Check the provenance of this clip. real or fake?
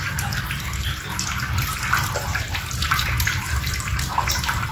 real